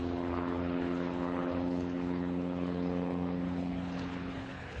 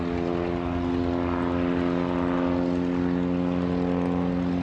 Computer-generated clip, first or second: first